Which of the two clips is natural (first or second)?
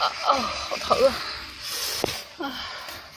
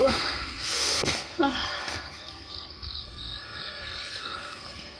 first